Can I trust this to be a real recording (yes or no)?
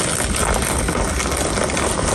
yes